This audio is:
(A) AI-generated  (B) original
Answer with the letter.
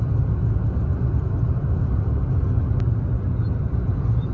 B